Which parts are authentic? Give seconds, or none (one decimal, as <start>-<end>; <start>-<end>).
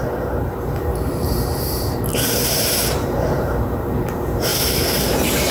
none